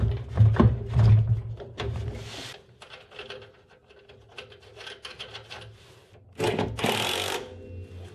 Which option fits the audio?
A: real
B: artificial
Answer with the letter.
A